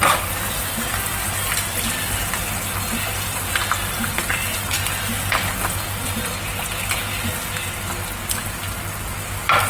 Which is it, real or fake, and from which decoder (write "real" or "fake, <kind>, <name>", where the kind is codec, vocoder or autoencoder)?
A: real